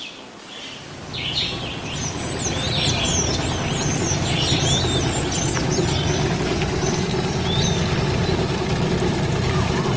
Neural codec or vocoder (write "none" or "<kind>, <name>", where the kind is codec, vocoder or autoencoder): none